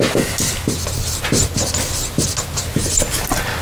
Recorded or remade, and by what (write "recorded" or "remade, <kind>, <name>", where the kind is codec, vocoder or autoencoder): recorded